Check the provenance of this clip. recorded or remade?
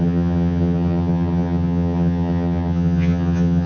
remade